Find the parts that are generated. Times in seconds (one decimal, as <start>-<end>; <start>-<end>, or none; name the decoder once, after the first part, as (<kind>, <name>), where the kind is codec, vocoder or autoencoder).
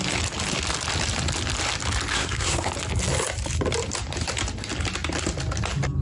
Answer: 2.1-2.7 (codec, SNAC)